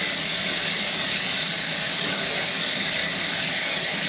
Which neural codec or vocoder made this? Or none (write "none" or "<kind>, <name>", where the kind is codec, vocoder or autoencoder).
codec, DAC